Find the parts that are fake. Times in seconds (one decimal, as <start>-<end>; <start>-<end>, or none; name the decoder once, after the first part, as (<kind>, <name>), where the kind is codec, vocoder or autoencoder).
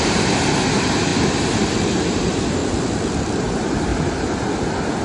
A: 0.0-2.6 (vocoder, BigVGAN v2); 3.5-3.9